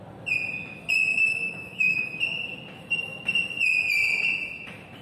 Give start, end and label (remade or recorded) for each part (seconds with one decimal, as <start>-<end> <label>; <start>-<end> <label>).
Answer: 0.0-1.1 recorded; 1.1-2.0 remade; 2.0-5.0 recorded